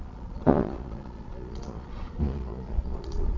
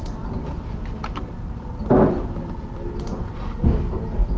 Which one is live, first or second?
second